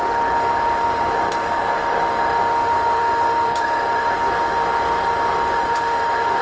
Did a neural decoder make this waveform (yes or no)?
yes